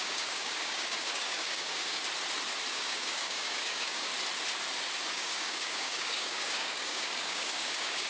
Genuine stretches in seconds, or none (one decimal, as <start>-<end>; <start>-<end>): 2.0-2.7; 4.1-5.1